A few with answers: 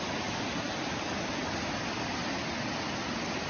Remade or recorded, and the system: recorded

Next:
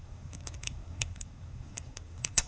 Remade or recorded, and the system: remade, codec, SNAC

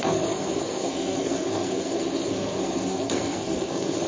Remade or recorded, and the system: remade, codec, SNAC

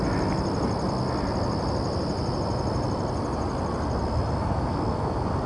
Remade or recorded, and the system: recorded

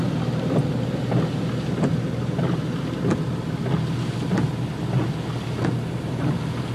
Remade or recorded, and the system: recorded